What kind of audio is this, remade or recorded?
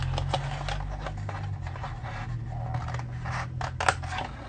recorded